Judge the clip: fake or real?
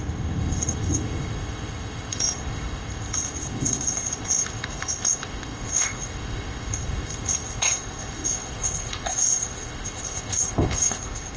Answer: fake